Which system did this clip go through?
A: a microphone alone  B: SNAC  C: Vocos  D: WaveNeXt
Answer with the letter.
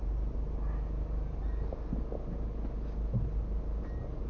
A